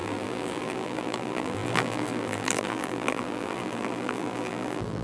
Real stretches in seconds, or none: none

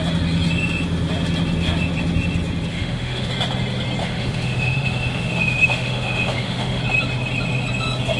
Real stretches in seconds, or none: 0.0-2.7; 3.3-4.0; 6.8-8.2

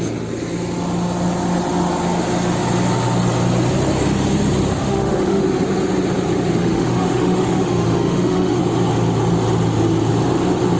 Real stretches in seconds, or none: 0.0-4.8; 5.4-6.6; 8.6-10.8

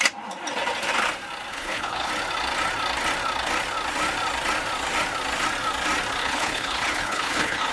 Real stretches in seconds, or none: 0.0-1.5; 2.1-6.2

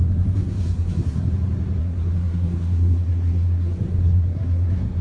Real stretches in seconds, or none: 1.3-1.8